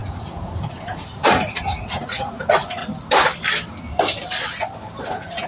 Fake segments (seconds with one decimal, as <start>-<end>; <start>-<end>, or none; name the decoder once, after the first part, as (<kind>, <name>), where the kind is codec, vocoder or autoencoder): 0.0-2.8 (vocoder, Vocos); 5.0-5.5